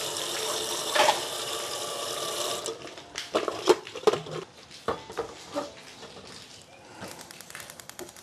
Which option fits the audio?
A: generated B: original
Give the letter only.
A